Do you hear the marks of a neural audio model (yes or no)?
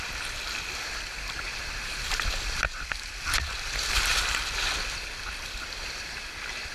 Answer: no